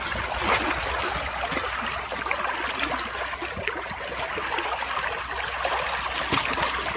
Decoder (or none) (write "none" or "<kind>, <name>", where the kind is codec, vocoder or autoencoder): none